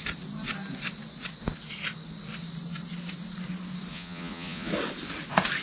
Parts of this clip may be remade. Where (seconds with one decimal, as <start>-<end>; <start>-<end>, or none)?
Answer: 3.9-4.7